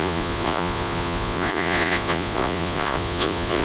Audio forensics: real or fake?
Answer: fake